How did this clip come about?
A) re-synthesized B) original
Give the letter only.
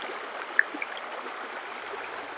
B